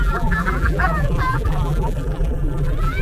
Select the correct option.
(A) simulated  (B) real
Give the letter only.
A